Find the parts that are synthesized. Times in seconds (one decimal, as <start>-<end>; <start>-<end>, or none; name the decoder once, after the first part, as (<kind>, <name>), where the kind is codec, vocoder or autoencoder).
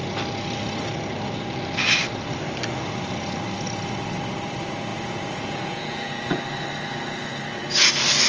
4.9-6.4 (vocoder, Vocos)